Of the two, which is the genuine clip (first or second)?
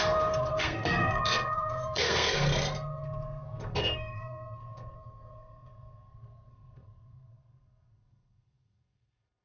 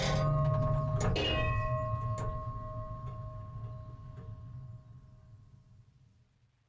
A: second